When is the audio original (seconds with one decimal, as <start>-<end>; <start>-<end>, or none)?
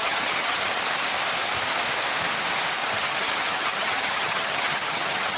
0.8-2.8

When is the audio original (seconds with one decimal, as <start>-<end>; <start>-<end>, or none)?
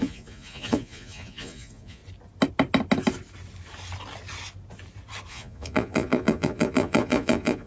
2.0-5.3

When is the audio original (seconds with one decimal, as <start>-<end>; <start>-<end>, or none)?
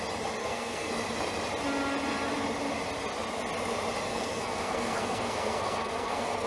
0.0-0.4; 0.9-4.1